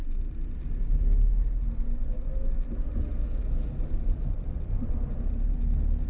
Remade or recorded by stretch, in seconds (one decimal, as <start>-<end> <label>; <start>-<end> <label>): 0.0-6.1 recorded